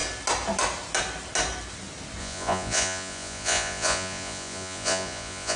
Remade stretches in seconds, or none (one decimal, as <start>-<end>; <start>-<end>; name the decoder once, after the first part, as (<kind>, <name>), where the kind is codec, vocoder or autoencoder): 2.2-5.6 (vocoder, Vocos)